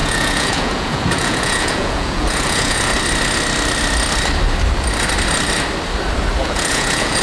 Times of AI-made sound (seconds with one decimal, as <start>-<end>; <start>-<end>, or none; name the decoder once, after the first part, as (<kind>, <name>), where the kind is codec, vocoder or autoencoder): 0.0-2.9 (vocoder, Vocos); 6.4-7.2